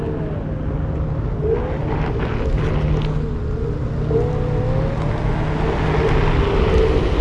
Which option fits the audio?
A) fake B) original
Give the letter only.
B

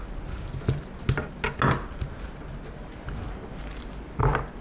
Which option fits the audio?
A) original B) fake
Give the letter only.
A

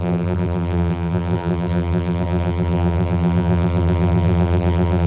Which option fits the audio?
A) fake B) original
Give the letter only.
A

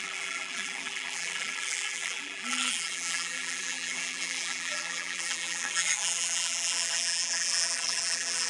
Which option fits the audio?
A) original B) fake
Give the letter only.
B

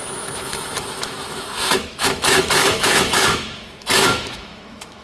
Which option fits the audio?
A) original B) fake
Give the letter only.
B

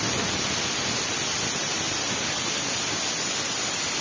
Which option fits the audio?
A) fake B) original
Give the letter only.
B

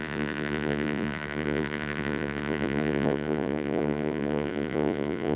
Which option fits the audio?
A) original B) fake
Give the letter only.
B